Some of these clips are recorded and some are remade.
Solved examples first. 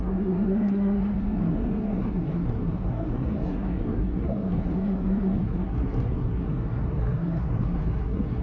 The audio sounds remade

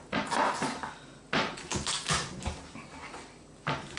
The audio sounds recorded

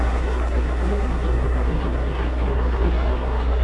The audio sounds remade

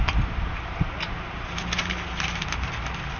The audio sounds recorded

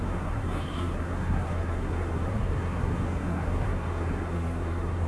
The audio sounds remade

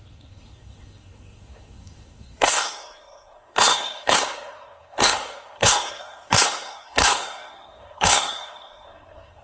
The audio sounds remade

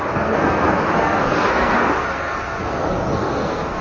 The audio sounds remade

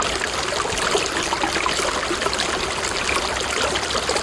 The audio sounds recorded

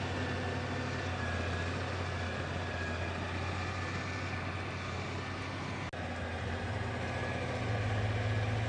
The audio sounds recorded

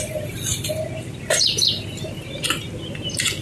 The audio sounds recorded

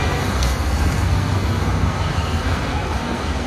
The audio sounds remade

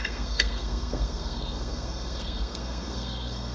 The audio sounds remade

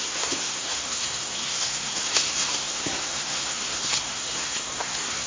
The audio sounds remade